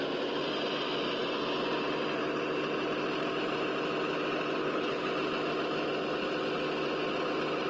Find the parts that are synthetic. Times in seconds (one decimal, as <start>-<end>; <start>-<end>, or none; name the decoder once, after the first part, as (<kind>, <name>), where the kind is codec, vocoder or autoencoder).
4.6-5.1 (codec, HILCodec)